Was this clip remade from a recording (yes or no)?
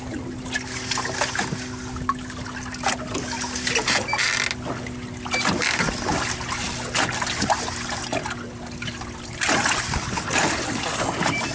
no